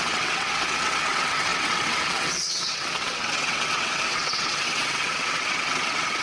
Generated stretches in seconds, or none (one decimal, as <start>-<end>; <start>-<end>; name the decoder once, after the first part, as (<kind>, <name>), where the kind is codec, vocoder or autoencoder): 0.0-6.2 (vocoder, WaveNeXt)